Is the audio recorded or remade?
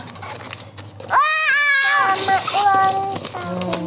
recorded